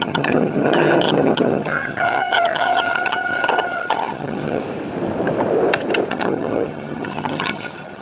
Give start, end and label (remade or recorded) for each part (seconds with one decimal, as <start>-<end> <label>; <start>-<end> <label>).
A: 0.0-4.6 remade; 4.6-6.1 recorded; 6.1-8.0 remade